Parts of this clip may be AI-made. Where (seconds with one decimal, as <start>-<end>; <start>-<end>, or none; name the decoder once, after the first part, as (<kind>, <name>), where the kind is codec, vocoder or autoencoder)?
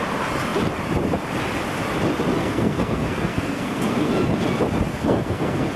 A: 2.4-4.1 (codec, SNAC); 4.9-5.8